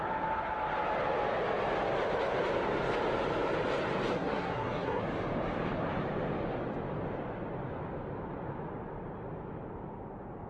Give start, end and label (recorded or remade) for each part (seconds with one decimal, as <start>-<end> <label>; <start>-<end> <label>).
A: 0.0-4.1 recorded; 4.1-5.0 remade; 5.0-10.5 recorded